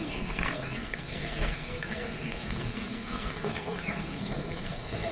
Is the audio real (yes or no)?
no